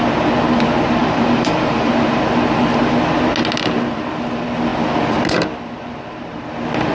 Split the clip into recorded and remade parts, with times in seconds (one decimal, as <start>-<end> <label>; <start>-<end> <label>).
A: 0.0-1.0 recorded; 1.0-2.1 remade; 2.1-6.9 recorded